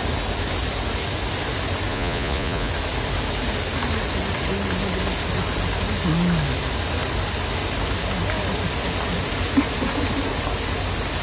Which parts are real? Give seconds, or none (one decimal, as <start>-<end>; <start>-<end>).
0.0-1.9; 2.7-11.2